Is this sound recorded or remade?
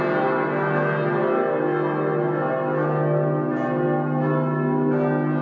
recorded